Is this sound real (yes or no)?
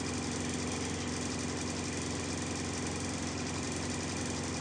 yes